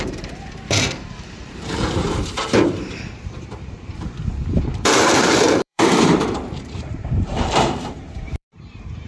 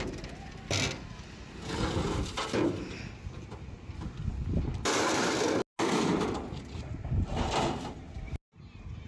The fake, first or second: first